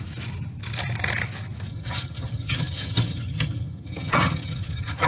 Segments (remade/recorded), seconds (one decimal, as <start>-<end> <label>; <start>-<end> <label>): 0.0-1.7 recorded; 1.7-5.1 remade